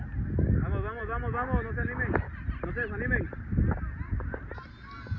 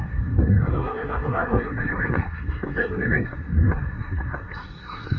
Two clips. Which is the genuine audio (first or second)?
first